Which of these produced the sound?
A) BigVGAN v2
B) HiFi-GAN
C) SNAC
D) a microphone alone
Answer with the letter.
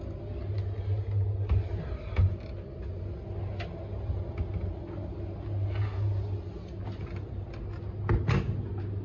D